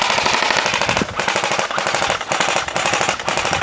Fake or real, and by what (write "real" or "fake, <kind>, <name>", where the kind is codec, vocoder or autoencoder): real